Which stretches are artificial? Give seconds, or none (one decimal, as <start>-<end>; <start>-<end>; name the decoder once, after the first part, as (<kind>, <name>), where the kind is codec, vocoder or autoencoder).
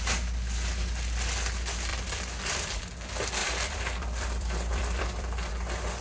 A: 1.9-2.8 (vocoder, BigVGAN v2); 3.4-5.5